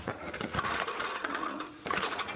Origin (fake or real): fake